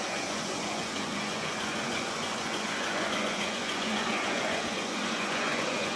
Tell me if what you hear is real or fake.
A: fake